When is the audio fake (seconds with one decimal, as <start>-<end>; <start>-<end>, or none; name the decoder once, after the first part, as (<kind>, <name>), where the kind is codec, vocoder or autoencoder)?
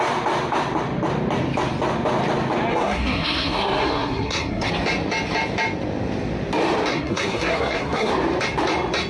2.7-4.7 (codec, SNAC); 6.9-8.1